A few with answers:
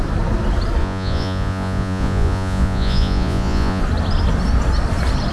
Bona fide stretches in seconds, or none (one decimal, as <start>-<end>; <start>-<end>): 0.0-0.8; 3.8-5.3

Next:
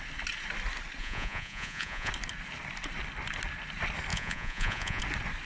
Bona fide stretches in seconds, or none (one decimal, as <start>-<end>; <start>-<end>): 0.0-1.0; 2.1-4.1; 5.0-5.5

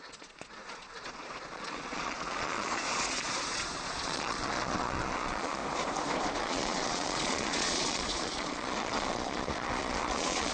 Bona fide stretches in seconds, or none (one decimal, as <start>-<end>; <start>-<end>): 5.6-6.4

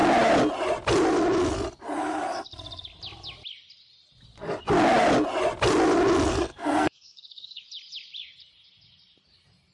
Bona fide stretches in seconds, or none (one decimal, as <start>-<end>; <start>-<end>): 0.0-6.3; 7.6-9.7

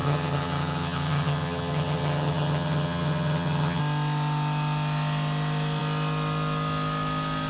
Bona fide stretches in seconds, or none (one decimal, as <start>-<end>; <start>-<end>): 3.8-7.5

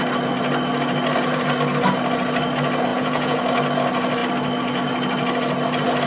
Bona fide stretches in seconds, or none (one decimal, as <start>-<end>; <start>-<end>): 0.0-2.9; 3.4-6.1

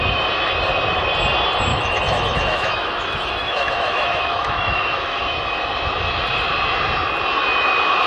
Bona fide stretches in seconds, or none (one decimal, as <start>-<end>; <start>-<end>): 0.0-1.7; 5.2-8.1